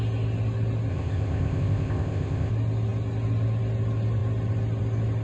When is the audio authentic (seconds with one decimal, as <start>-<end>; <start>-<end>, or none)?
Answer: 0.0-0.9; 2.5-5.2